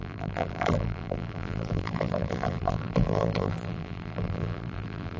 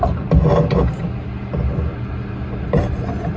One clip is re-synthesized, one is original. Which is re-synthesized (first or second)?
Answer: first